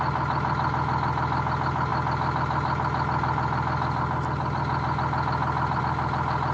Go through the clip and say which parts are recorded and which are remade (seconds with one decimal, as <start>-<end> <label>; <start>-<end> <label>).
0.0-6.5 recorded